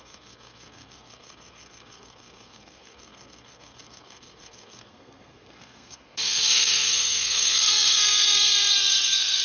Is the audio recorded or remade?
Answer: remade